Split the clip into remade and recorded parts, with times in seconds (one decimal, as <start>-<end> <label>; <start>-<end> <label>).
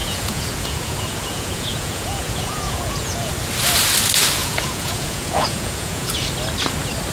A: 0.0-3.3 remade; 3.3-4.4 recorded; 4.4-6.3 remade; 6.3-7.1 recorded